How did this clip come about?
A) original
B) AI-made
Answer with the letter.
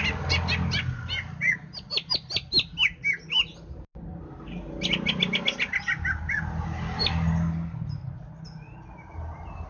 A